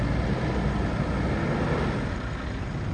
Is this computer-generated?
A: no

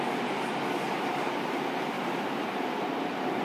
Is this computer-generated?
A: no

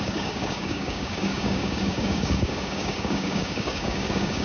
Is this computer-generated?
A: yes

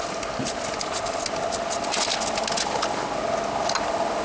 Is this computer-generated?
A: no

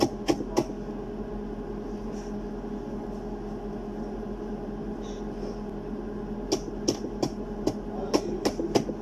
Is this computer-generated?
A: no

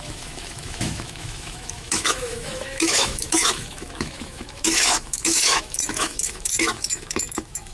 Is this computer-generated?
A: yes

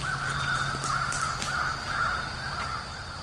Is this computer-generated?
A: no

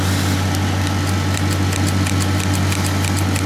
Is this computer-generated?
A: no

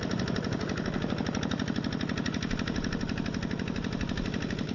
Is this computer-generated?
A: no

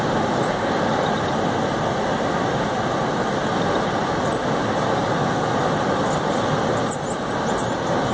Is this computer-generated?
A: no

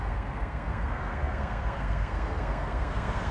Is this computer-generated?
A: yes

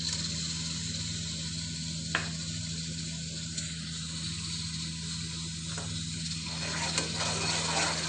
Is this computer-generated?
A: no